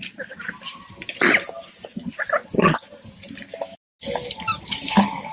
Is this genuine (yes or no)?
yes